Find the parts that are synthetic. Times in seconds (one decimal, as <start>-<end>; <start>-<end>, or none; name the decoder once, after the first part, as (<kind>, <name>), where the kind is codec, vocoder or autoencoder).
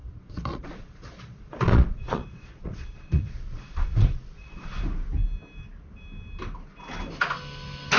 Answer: 0.0-4.8 (vocoder, Vocos)